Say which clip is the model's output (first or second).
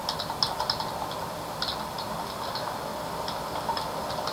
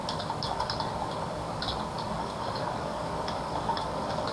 second